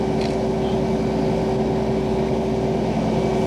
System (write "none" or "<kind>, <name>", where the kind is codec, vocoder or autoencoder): none